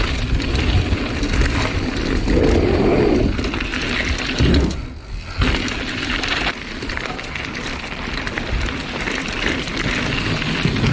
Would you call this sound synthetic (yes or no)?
no